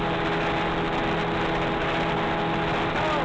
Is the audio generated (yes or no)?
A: no